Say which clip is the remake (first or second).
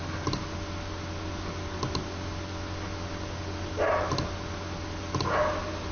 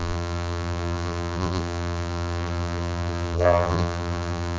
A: second